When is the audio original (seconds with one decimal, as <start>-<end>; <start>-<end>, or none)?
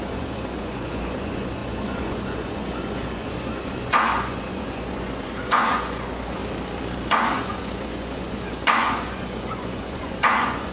6.4-7.1